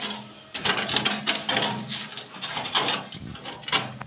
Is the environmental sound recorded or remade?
recorded